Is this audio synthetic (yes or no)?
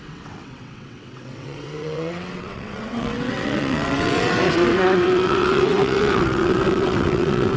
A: yes